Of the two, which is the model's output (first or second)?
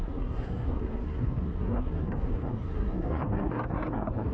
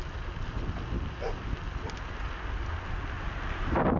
first